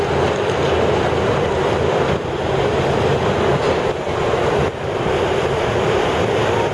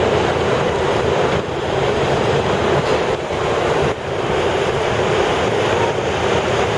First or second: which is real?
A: first